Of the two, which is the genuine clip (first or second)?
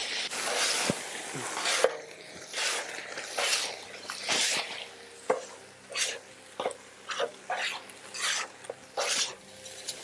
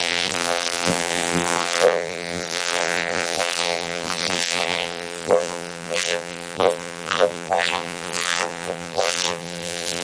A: first